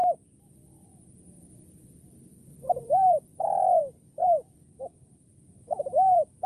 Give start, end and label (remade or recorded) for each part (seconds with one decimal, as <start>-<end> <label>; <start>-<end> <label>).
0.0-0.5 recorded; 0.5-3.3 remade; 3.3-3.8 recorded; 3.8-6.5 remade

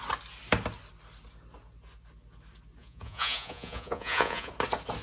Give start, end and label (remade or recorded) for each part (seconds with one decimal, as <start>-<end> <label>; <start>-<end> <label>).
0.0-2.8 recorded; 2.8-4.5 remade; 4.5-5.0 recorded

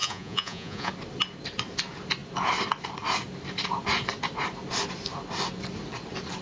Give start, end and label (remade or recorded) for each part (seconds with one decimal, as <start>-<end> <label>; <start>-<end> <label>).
0.0-0.9 remade; 0.9-6.4 recorded

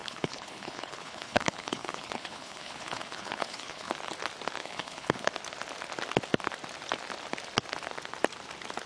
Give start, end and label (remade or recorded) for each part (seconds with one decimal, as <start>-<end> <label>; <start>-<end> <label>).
0.0-3.9 remade; 3.9-4.6 recorded; 4.6-5.3 remade; 5.3-8.9 recorded